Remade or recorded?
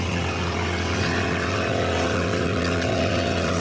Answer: remade